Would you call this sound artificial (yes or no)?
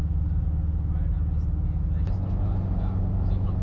no